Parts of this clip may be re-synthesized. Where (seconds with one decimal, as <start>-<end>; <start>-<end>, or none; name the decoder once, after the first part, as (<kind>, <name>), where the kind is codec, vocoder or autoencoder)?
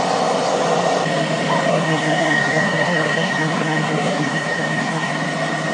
1.7-5.1 (codec, SNAC)